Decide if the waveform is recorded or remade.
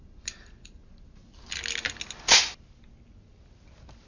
recorded